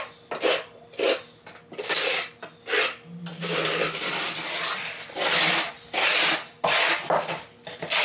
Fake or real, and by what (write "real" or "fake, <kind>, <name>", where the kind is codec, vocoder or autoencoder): real